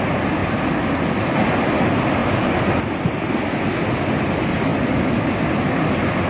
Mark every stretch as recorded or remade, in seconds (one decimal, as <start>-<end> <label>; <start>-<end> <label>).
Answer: 0.0-6.3 recorded